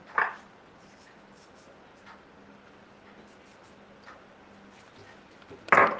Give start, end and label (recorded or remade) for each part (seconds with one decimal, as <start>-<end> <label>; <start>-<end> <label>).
0.0-0.6 remade; 0.6-6.0 recorded